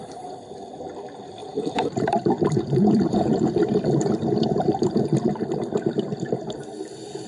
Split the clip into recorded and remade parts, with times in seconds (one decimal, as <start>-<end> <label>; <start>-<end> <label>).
0.0-1.4 recorded; 1.4-5.8 remade; 5.8-7.3 recorded